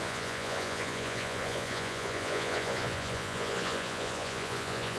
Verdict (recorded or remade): remade